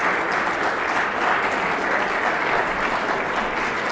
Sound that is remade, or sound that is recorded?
recorded